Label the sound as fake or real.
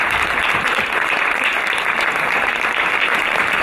fake